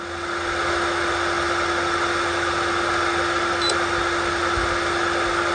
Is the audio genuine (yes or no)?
yes